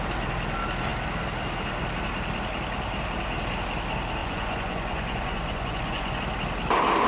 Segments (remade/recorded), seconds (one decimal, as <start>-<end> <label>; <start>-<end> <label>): 0.0-4.2 recorded; 4.2-6.2 remade; 6.2-7.1 recorded

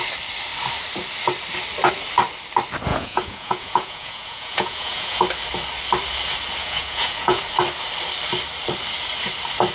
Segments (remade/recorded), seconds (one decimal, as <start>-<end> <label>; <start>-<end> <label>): 0.0-2.9 recorded; 2.9-5.2 remade; 5.2-6.6 recorded; 6.6-7.4 remade; 7.4-9.7 recorded